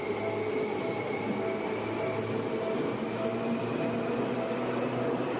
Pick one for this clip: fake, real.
real